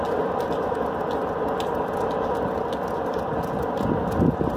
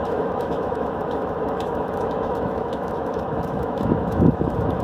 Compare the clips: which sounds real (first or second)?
first